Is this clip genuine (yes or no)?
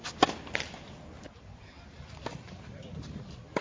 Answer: yes